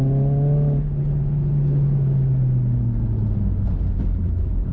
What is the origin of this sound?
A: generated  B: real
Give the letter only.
B